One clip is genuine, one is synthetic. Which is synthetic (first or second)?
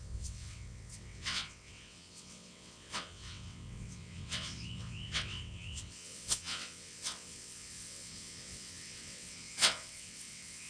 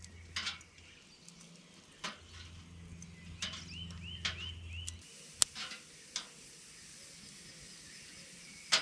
first